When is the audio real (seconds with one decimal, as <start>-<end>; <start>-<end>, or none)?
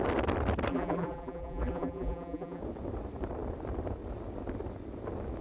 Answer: 0.0-0.7; 2.6-5.4